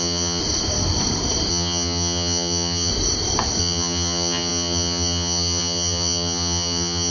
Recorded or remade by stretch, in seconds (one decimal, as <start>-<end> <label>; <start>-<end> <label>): 0.0-0.4 remade; 0.4-1.5 recorded; 1.5-2.9 remade; 2.9-3.6 recorded; 3.6-7.1 remade